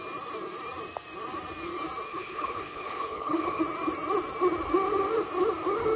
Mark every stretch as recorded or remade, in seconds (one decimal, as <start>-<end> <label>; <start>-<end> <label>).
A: 0.0-2.1 recorded; 2.1-3.6 remade; 3.6-6.0 recorded